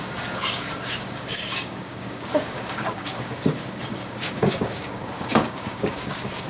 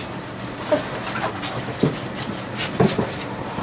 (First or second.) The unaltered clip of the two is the second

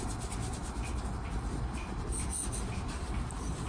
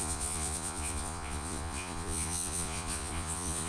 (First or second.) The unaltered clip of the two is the first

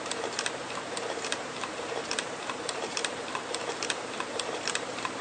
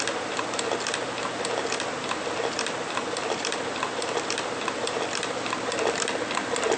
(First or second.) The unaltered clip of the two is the second